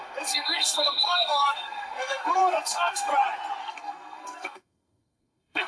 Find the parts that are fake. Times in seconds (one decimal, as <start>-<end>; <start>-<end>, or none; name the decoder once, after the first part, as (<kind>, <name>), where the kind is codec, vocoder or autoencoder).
0.0-3.1 (codec, SNAC); 3.6-5.7